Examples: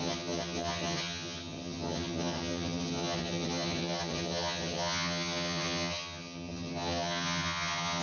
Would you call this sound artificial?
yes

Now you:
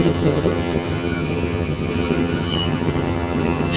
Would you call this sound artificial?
yes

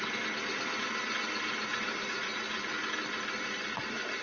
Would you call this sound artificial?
no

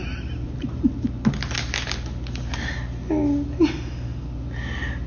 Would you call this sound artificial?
no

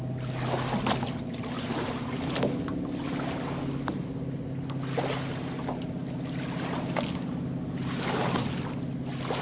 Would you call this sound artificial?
no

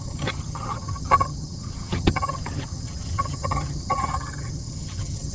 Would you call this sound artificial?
yes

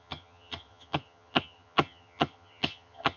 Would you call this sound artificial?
yes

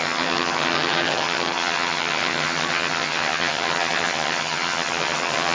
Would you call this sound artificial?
yes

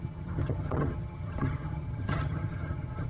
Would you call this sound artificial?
yes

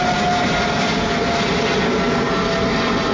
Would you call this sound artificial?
no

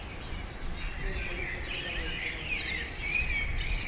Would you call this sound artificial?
no